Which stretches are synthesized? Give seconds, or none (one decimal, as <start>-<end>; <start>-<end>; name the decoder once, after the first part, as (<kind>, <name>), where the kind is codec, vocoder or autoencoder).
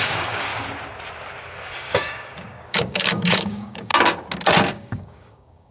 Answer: 0.0-0.5 (codec, DAC); 1.4-3.9; 4.7-5.7